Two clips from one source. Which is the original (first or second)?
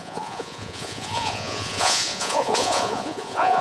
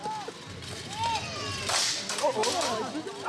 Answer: second